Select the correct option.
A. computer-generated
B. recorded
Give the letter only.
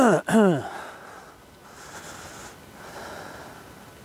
B